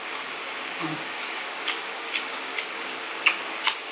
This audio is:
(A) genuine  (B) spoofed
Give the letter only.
B